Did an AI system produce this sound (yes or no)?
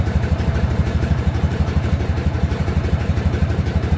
yes